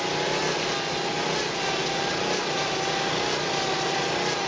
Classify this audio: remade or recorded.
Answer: recorded